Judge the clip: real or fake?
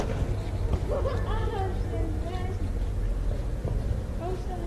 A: real